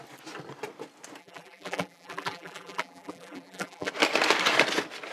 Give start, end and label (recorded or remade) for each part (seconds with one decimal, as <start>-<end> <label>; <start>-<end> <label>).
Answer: 0.0-1.2 recorded; 1.2-3.9 remade; 3.9-5.1 recorded